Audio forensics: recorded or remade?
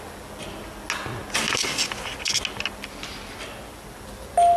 recorded